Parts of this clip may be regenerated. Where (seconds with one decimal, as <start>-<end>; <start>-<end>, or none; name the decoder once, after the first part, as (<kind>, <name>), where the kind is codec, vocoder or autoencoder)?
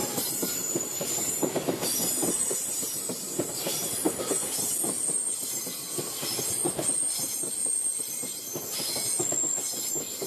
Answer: 0.0-4.2 (vocoder, BigVGAN v2); 6.6-7.5